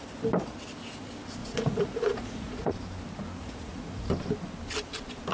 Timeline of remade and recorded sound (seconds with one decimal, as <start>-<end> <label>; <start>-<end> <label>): 0.0-1.4 recorded; 1.4-2.7 remade; 2.7-3.4 recorded; 3.4-4.1 remade; 4.1-5.3 recorded